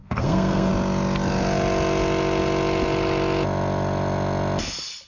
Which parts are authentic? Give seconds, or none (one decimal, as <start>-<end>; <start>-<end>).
0.7-5.1